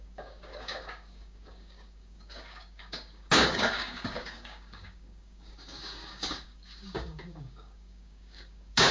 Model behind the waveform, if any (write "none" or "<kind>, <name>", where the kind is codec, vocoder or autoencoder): codec, DAC